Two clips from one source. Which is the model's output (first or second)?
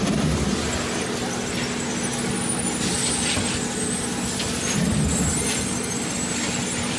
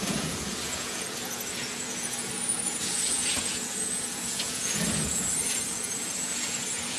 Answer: second